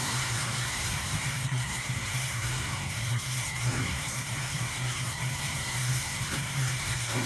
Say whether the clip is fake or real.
fake